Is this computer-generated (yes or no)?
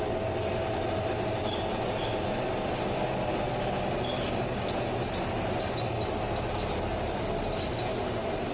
no